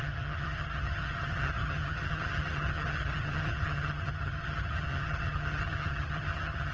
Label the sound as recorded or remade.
remade